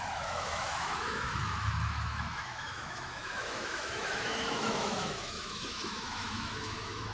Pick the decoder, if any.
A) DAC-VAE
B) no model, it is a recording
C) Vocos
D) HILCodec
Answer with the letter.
A